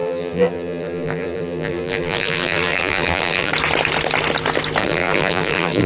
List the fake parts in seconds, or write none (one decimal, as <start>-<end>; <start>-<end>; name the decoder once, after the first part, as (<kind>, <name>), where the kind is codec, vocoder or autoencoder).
0.0-3.5 (vocoder, BigVGAN v2); 4.8-5.9